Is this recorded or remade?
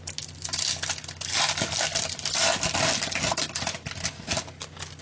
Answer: recorded